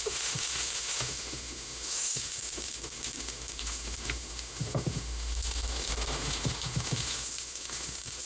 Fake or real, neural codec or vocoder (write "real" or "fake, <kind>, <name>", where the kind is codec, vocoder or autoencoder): fake, autoencoder, DAC-VAE